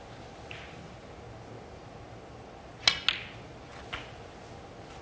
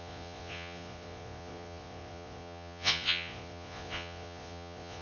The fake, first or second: second